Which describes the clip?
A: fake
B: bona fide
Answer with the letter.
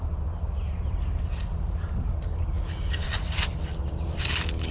B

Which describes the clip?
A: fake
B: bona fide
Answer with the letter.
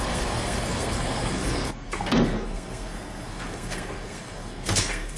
A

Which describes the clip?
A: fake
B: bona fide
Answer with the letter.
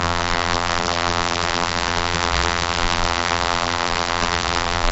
A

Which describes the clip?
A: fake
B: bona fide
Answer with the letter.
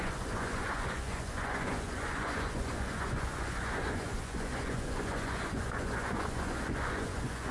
A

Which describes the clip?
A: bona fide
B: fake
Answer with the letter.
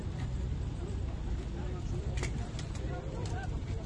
B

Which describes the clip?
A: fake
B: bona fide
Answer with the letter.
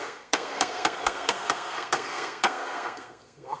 A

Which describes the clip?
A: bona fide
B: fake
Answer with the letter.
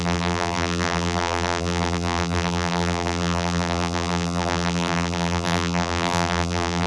B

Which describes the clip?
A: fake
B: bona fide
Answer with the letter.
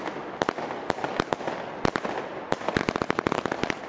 B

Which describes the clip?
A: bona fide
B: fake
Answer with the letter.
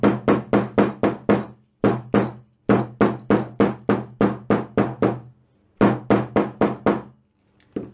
A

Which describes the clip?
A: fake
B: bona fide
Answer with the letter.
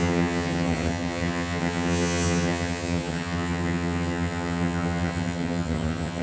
A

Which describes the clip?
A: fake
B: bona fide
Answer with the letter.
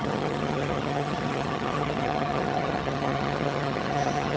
A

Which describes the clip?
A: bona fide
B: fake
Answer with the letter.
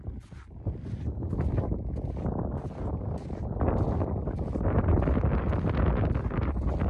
A